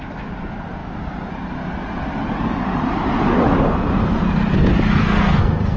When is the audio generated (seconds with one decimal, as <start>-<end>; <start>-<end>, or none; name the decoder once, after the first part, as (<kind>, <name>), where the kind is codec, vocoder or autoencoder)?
5.0-5.8 (codec, SNAC)